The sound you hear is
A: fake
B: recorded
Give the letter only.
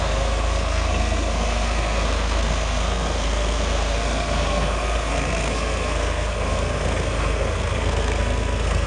A